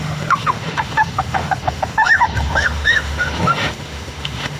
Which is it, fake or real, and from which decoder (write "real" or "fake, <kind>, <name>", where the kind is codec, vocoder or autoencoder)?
fake, autoencoder, DAC-VAE